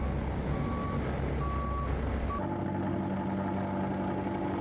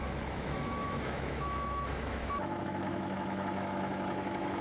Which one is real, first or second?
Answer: first